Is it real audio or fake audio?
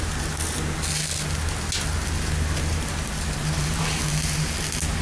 real